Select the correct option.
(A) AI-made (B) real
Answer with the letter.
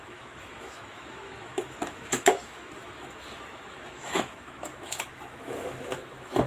A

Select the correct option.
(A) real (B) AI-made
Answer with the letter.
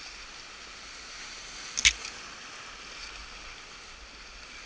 A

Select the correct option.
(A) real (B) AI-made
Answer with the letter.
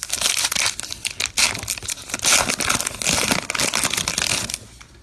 A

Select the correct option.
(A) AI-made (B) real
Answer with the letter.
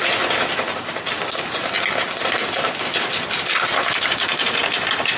A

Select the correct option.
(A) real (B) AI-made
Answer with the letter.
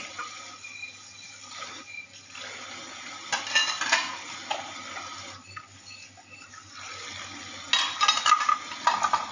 A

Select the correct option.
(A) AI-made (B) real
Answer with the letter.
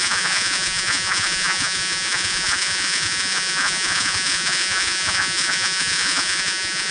A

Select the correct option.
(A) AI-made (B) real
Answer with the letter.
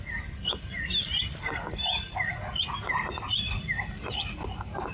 B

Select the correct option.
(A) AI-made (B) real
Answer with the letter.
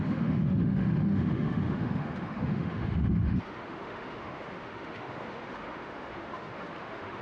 A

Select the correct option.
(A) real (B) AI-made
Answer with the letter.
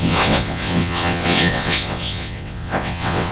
B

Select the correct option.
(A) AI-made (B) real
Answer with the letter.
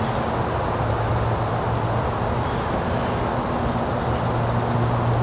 B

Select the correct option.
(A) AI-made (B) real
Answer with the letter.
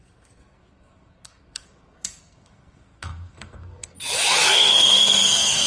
A